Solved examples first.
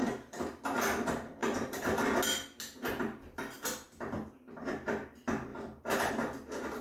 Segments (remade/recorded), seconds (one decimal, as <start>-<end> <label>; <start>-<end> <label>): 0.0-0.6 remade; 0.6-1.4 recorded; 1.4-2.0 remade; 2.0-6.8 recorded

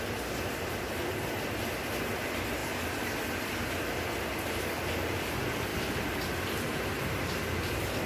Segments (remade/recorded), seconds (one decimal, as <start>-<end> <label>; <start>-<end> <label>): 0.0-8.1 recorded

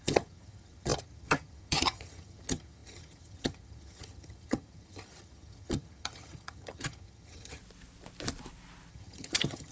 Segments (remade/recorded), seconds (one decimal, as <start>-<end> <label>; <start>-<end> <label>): 0.0-7.6 remade; 7.6-8.9 recorded; 8.9-9.7 remade